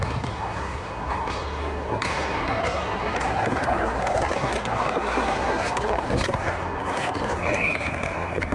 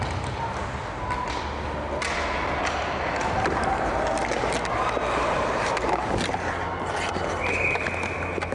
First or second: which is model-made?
first